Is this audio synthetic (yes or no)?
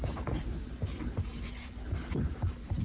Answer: yes